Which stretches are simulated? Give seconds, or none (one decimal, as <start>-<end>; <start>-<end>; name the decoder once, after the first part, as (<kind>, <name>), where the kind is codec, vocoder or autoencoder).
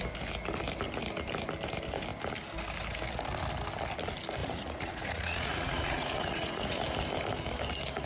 4.4-6.8 (vocoder, Vocos)